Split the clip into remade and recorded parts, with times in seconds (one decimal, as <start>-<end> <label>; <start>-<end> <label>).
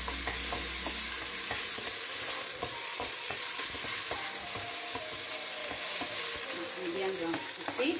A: 0.0-2.4 recorded; 2.4-3.6 remade; 3.6-8.0 recorded